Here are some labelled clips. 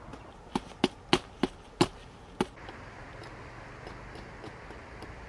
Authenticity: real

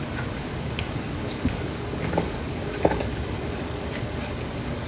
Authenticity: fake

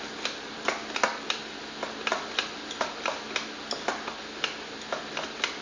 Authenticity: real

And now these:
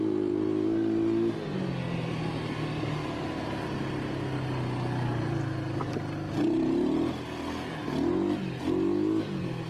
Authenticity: real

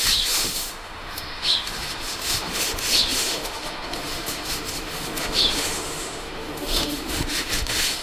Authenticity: fake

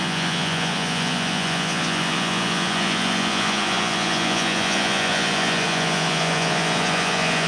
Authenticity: fake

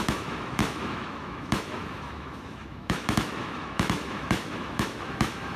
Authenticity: fake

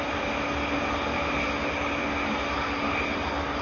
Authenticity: real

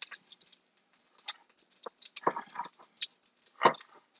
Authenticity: real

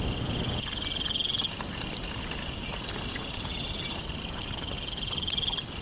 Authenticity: real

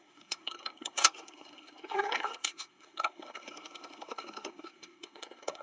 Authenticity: fake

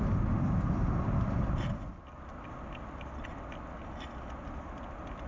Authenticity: real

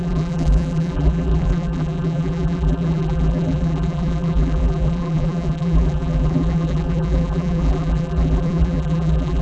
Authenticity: fake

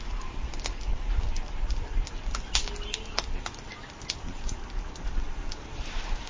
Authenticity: real